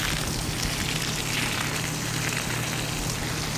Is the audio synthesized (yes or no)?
no